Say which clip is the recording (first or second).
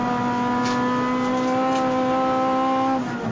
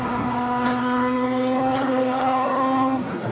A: first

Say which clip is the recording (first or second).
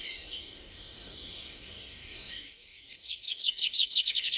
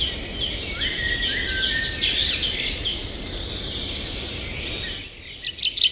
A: second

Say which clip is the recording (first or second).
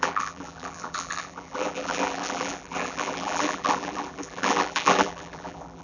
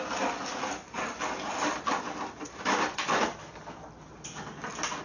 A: second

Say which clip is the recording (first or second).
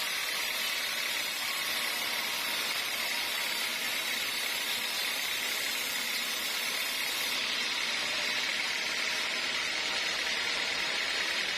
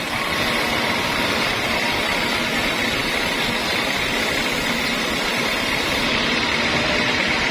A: second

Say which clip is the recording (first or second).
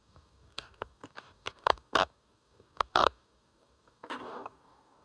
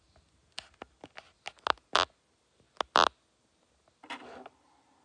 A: second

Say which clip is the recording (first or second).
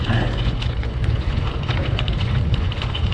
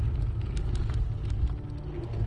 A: second